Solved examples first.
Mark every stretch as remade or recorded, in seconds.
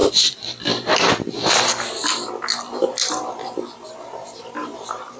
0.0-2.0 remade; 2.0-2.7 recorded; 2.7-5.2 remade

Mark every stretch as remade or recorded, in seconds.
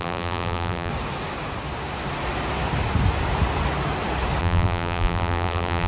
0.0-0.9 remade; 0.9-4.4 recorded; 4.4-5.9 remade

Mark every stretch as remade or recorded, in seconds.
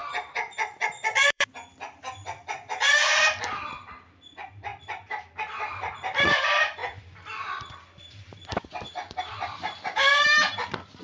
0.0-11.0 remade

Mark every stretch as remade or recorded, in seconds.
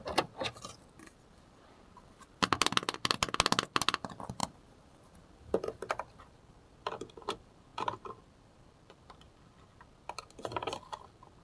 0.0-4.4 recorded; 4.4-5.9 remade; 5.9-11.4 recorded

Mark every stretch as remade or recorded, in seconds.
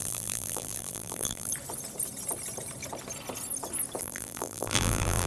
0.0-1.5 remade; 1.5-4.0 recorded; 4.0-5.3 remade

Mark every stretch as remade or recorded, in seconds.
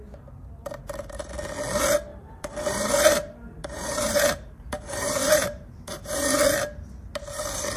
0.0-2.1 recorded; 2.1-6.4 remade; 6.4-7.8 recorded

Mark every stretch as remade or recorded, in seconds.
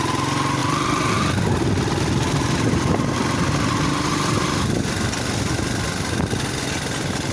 0.0-0.6 recorded; 0.6-1.2 remade; 1.2-7.3 recorded